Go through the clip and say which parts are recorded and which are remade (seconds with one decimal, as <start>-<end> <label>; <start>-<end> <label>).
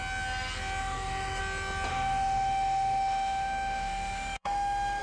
0.0-0.8 recorded; 0.8-1.4 remade; 1.4-1.9 recorded; 1.9-5.0 remade